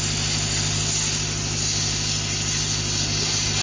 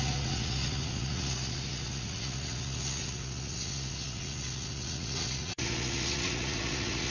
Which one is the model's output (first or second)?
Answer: second